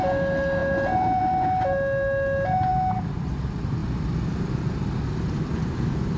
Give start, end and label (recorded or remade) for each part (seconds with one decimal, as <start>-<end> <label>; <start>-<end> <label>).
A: 0.0-6.2 recorded